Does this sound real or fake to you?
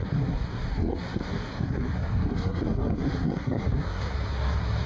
fake